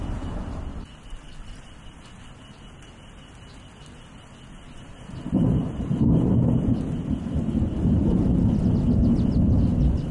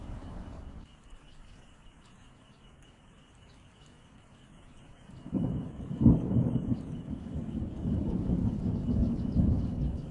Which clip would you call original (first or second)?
first